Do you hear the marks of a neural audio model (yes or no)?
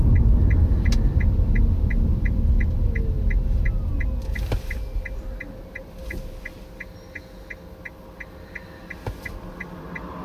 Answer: no